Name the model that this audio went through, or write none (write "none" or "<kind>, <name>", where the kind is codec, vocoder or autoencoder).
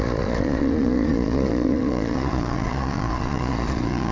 vocoder, Vocos